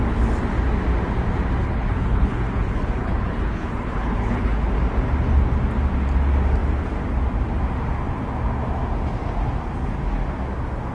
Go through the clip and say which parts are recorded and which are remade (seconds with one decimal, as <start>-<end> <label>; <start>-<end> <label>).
0.0-1.6 recorded; 1.6-4.7 remade; 4.7-10.9 recorded

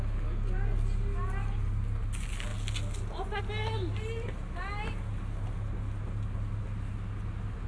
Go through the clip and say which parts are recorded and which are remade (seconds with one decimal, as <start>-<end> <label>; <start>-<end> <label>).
0.0-7.7 recorded

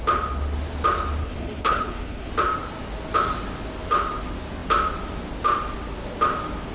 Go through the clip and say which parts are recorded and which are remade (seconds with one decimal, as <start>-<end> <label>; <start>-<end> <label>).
0.0-1.2 recorded; 1.2-2.3 remade; 2.3-6.7 recorded

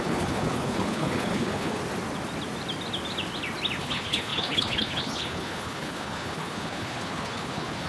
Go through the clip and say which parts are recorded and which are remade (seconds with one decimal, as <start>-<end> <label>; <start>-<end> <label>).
0.0-1.8 remade; 1.8-3.8 recorded; 3.8-7.9 remade

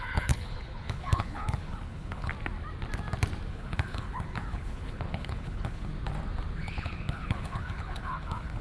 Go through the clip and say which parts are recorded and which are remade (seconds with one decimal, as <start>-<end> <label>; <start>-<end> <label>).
0.0-2.3 remade; 2.3-3.5 recorded; 3.5-5.9 remade; 5.9-6.6 recorded; 6.6-8.6 remade